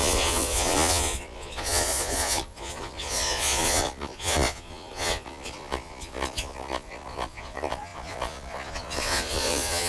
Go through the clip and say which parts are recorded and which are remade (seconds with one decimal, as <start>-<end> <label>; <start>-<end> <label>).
0.0-9.9 remade